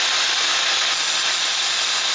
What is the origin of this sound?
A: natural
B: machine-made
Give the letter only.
A